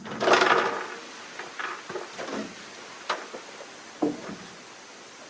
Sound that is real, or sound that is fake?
real